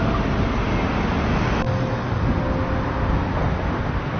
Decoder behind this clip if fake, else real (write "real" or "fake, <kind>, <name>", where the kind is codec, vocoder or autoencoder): real